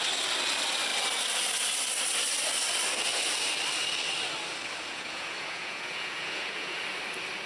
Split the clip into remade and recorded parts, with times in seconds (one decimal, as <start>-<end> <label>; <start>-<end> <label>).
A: 0.0-4.9 recorded; 4.9-6.8 remade; 6.8-7.5 recorded